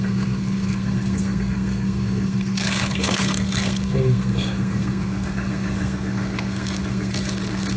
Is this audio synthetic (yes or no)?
yes